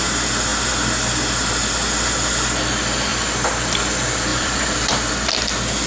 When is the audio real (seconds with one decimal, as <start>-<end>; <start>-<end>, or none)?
0.0-3.1; 3.6-4.3; 5.1-5.9